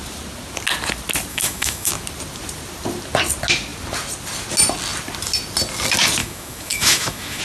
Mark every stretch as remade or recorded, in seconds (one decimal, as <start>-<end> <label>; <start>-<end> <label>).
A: 0.0-1.3 recorded; 1.3-1.9 remade; 1.9-6.2 recorded; 6.2-7.4 remade